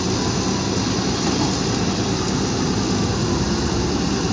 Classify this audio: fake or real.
real